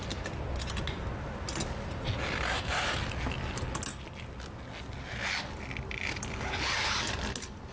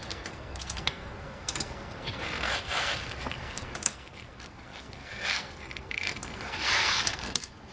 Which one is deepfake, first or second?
second